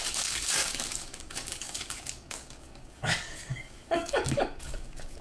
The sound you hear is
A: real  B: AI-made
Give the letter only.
B